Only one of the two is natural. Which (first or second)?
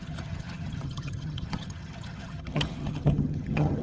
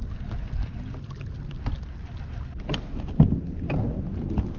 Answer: second